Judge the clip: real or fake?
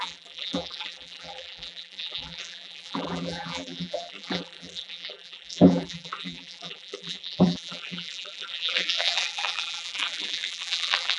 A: fake